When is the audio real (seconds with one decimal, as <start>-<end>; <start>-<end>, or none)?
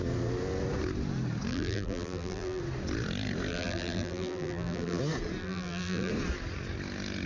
0.0-1.5; 2.6-3.5; 5.0-5.4; 6.1-7.3